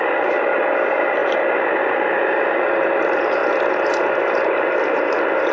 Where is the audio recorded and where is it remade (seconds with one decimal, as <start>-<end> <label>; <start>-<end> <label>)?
0.0-5.5 remade